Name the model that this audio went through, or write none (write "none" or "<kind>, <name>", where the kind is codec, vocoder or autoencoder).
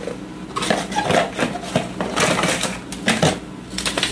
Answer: none